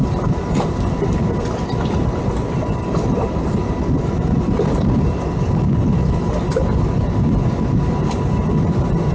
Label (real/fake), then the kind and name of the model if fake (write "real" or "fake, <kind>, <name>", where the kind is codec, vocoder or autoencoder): real